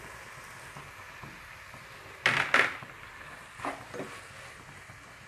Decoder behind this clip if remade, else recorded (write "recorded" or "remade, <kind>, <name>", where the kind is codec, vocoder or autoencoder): recorded